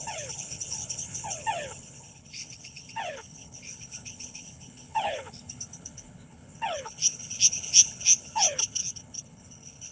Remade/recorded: remade